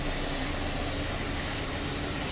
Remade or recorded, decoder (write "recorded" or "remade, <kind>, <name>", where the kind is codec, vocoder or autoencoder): recorded